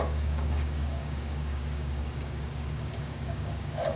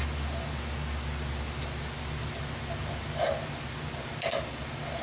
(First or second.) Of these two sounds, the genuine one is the second